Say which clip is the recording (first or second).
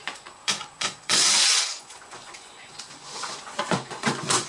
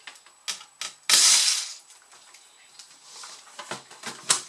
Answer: second